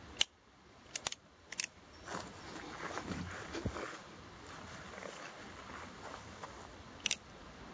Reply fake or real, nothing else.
real